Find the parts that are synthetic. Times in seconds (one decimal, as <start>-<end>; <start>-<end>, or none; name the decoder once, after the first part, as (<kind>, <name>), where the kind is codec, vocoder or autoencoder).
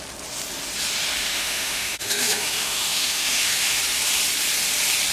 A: 1.2-3.8 (autoencoder, DAC-VAE)